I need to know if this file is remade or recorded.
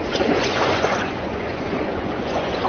remade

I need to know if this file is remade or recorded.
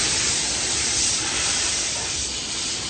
remade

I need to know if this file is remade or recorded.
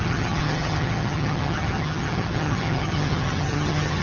remade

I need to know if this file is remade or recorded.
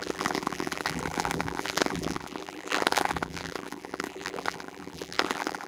remade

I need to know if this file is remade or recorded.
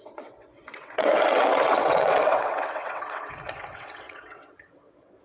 remade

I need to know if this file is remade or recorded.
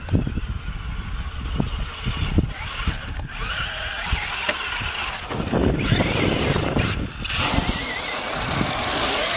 recorded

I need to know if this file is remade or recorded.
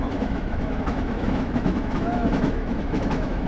remade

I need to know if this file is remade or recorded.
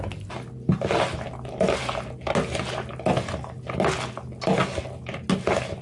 recorded